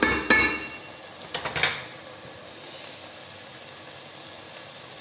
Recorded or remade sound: recorded